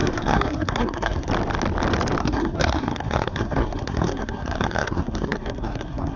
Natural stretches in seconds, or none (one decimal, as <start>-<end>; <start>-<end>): 1.3-2.2